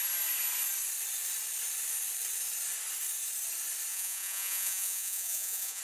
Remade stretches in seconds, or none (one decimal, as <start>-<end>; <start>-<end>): 3.9-5.8